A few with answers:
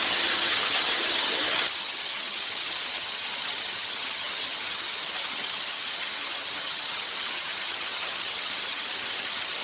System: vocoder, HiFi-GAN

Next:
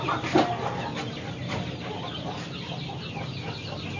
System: none